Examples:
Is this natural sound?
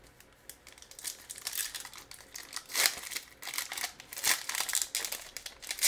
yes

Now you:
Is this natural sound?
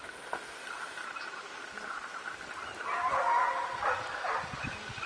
yes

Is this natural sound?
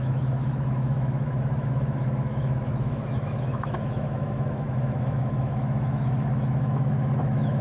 no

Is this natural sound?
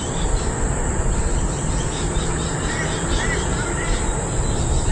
yes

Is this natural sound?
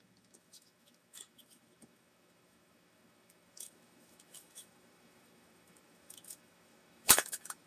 no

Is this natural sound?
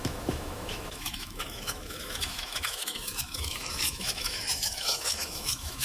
no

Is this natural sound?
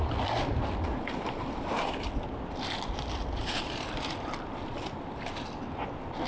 yes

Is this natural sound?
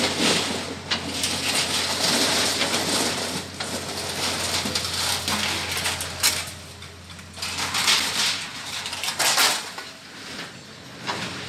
yes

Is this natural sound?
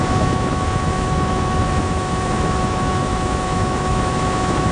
no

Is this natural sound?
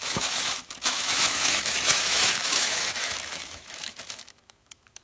no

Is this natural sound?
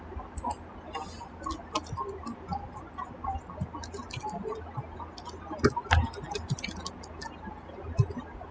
yes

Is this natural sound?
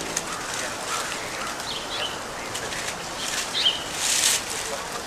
yes